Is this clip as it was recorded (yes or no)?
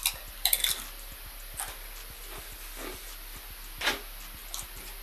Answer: yes